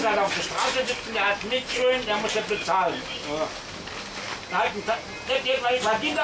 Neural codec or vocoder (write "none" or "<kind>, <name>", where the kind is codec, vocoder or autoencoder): none